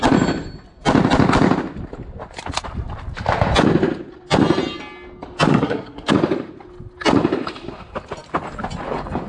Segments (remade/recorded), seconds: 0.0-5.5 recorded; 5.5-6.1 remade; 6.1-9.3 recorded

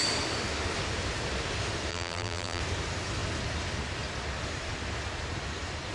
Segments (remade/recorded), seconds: 0.0-1.9 recorded; 1.9-2.6 remade; 2.6-5.9 recorded

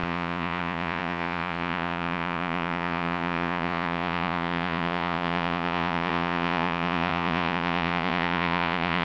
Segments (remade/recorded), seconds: 0.0-9.0 remade

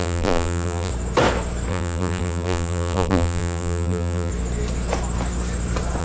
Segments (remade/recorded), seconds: 0.0-0.9 remade; 0.9-1.7 recorded; 1.7-4.3 remade; 4.3-6.0 recorded